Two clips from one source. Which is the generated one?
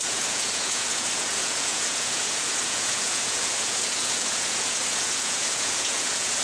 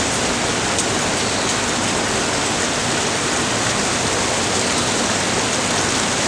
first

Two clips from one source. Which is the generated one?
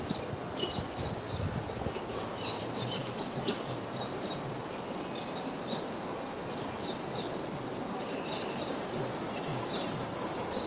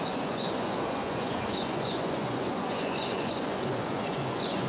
second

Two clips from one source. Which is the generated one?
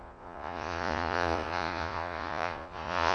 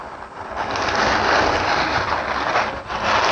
first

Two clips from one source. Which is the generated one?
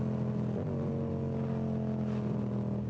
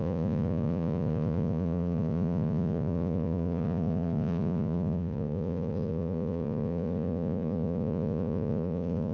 second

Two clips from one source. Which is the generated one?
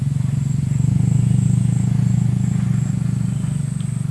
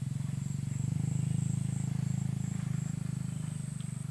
first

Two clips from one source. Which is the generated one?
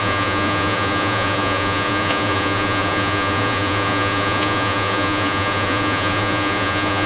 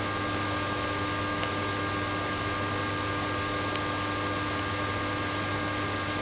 first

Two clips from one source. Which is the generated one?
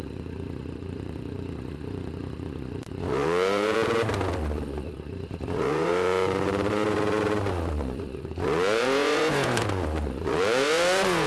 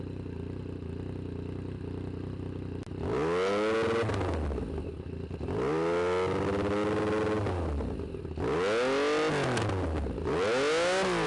first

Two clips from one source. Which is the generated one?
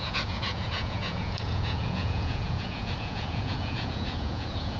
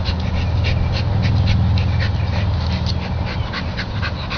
first